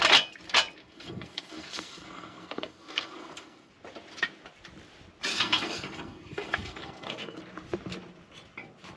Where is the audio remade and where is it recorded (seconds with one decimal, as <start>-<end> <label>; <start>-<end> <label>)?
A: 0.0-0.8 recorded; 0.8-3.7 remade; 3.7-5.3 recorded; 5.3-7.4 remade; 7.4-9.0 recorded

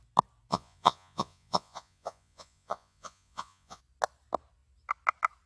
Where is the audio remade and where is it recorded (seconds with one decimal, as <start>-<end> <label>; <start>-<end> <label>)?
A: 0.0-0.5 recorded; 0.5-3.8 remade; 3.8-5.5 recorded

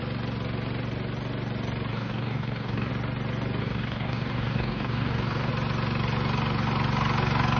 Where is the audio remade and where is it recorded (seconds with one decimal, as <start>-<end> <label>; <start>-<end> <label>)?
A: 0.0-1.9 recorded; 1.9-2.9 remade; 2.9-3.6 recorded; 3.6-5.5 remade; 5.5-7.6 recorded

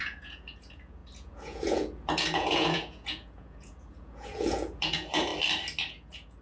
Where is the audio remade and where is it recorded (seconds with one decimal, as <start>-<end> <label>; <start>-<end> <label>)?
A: 0.0-5.3 remade; 5.3-5.9 recorded; 5.9-6.4 remade

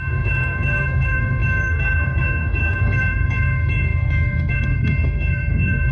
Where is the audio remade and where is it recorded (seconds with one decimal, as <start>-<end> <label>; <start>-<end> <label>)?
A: 0.0-5.9 remade